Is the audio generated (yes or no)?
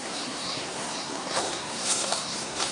yes